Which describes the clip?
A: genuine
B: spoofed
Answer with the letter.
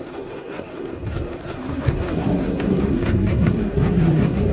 B